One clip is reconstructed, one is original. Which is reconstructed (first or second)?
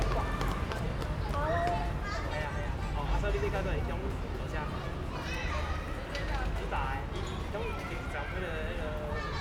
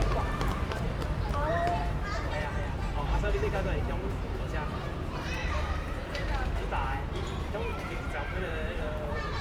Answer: second